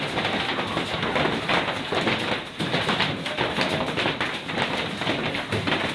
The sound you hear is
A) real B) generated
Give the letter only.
A